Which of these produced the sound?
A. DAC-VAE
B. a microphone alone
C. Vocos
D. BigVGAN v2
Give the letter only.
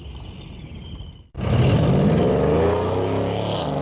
B